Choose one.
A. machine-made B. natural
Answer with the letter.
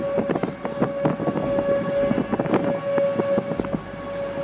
B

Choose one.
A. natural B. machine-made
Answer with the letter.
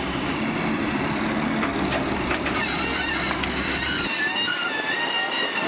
B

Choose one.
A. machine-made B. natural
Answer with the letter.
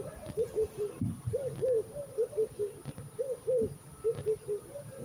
B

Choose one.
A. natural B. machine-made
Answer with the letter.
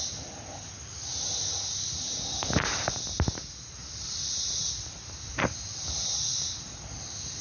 A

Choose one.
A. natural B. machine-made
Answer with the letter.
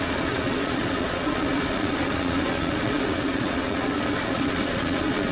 B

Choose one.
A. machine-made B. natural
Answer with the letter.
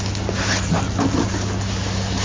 B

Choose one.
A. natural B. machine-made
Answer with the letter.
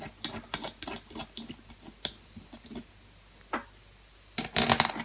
A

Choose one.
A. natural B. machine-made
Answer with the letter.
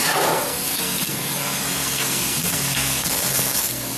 B